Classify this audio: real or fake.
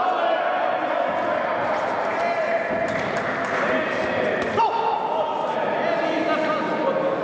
real